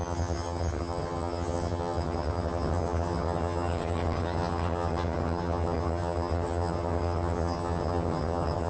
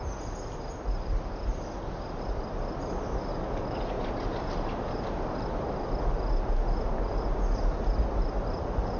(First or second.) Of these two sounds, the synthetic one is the first